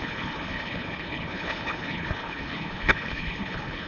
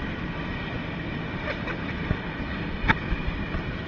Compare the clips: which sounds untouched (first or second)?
second